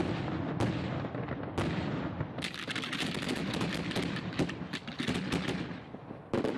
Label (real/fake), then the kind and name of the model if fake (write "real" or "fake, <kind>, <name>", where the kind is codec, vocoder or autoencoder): real